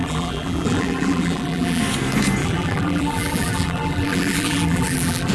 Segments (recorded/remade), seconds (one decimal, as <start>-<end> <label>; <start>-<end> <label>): 0.0-1.8 remade; 1.8-2.4 recorded; 2.4-5.3 remade